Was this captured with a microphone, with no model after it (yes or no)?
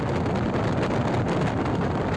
yes